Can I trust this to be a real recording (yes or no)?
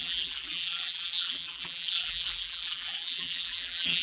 no